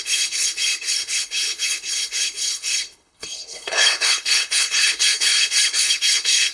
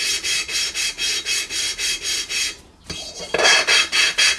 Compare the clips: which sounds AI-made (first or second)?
first